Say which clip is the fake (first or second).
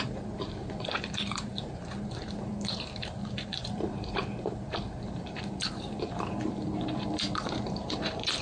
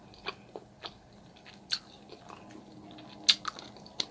first